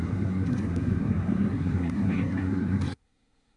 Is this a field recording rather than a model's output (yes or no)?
no